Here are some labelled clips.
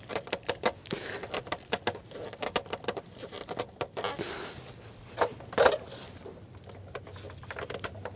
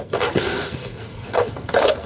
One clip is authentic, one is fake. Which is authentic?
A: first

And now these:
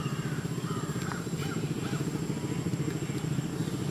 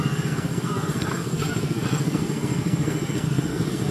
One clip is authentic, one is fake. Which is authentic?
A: first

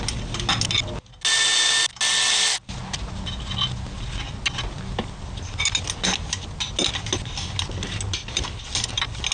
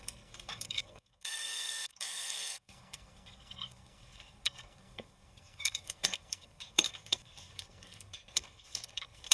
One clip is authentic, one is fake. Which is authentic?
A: first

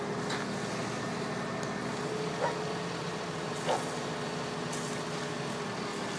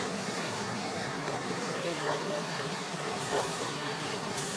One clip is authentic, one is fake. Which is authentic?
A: first